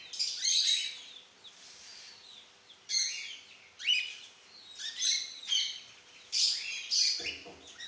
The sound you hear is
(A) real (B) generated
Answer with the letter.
A